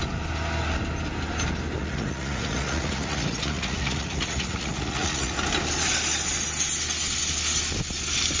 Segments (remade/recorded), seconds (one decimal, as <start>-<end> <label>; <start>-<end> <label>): 0.0-1.8 recorded; 1.8-5.3 remade; 5.3-8.4 recorded